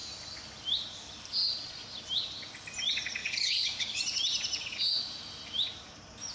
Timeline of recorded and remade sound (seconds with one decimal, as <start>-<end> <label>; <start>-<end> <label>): 0.0-3.2 recorded; 3.2-4.0 remade; 4.0-6.3 recorded